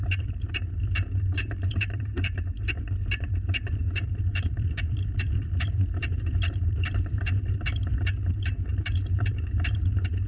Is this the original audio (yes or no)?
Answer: no